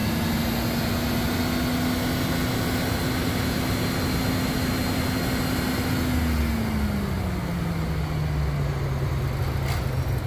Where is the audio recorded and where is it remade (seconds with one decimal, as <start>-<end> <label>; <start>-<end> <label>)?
0.0-10.3 recorded